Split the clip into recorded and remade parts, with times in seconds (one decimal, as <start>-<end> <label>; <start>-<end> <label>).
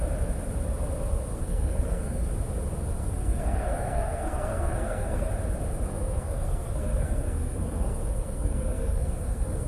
0.0-1.3 recorded; 1.3-2.3 remade; 2.3-3.0 recorded; 3.0-5.3 remade; 5.3-5.9 recorded; 5.9-9.7 remade